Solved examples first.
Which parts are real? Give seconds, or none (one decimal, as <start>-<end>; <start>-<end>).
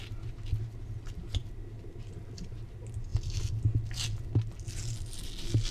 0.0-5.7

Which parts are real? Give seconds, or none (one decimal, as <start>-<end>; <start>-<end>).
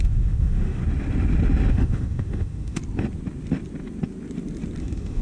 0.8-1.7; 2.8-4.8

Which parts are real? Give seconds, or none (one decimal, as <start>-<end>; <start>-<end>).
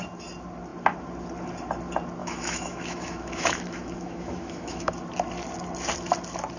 0.0-2.2; 4.9-6.6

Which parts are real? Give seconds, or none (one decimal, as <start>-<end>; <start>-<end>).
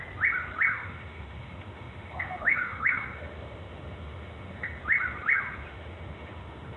0.0-0.7; 4.8-5.7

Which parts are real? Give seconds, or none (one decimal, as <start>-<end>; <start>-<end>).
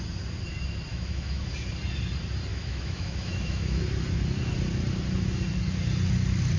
0.0-0.9; 1.5-2.5; 3.8-6.6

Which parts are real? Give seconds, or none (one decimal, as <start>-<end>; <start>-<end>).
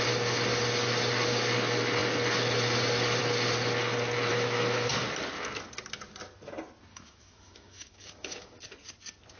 0.0-4.3; 4.9-6.9; 8.6-9.4